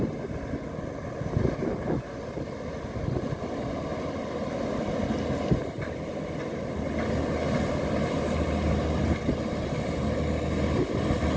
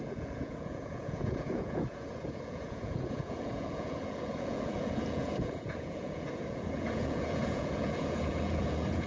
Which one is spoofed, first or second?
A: second